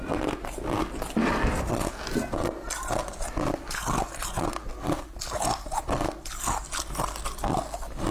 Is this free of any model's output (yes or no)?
yes